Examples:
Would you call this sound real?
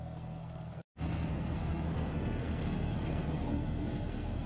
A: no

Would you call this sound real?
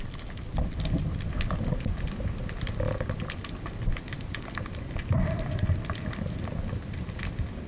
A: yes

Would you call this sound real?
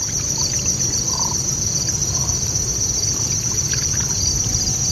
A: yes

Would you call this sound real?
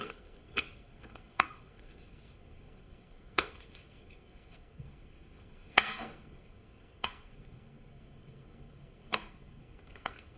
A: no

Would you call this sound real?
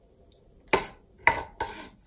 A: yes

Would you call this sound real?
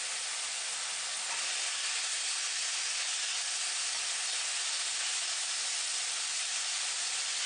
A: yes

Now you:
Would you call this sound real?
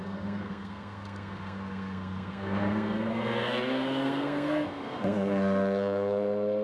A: no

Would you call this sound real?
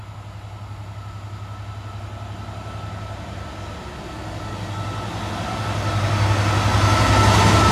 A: yes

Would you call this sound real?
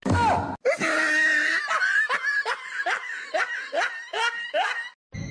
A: yes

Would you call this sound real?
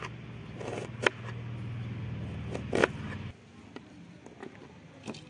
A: yes